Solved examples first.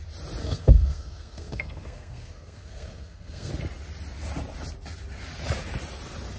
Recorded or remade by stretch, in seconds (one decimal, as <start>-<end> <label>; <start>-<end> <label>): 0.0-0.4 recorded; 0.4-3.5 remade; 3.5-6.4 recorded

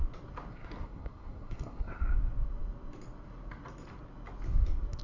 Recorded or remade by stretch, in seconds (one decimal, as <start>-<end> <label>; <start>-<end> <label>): 0.0-0.5 recorded; 0.5-2.0 remade; 2.0-5.0 recorded

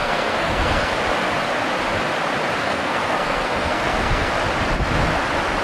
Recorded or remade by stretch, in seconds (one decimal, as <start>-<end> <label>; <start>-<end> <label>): 0.0-0.9 remade; 0.9-2.6 recorded; 2.6-4.3 remade; 4.3-5.6 recorded

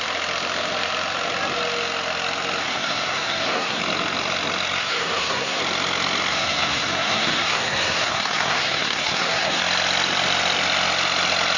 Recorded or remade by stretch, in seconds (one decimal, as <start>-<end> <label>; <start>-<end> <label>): 0.0-2.6 recorded; 2.6-3.8 remade; 3.8-4.8 recorded; 4.8-5.6 remade; 5.6-6.3 recorded; 6.3-9.6 remade; 9.6-11.6 recorded

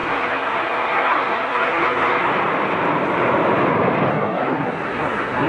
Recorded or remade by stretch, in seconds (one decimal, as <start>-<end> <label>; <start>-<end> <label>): 0.0-2.3 remade; 2.3-4.1 recorded; 4.1-5.5 remade

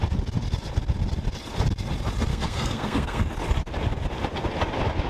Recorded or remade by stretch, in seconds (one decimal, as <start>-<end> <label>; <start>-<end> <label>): 0.0-2.3 recorded; 2.3-3.2 remade; 3.2-5.1 recorded

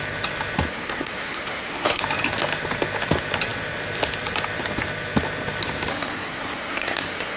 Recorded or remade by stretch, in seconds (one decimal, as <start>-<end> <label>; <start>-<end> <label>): 0.0-0.7 recorded; 0.7-2.0 remade; 2.0-5.9 recorded; 5.9-7.4 remade